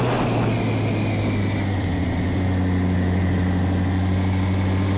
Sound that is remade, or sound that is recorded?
recorded